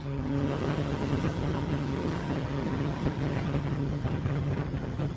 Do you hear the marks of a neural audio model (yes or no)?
yes